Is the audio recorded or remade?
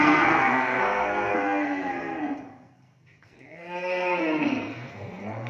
remade